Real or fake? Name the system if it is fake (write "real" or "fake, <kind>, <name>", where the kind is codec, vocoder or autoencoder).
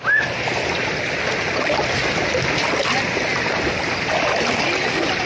real